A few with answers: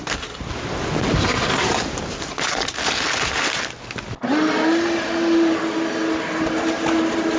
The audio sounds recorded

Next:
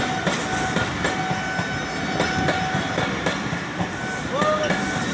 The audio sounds recorded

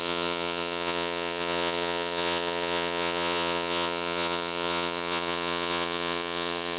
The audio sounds remade